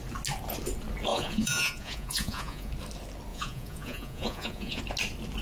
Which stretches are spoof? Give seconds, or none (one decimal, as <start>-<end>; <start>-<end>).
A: 1.1-2.7; 3.3-4.8